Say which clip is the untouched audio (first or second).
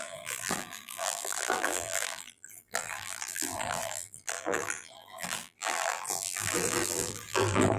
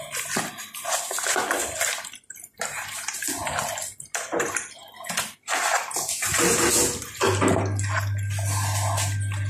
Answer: second